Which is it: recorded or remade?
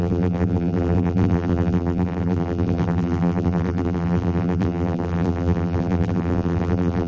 remade